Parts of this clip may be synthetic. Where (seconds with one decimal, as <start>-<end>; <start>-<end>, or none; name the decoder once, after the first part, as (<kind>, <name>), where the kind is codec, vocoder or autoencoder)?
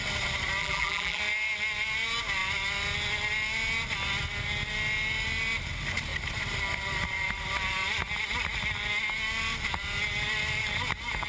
0.6-1.2 (vocoder, BigVGAN v2)